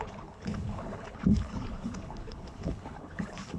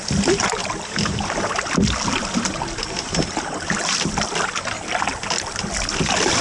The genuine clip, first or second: second